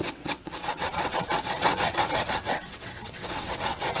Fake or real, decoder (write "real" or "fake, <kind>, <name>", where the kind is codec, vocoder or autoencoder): fake, vocoder, WaveNeXt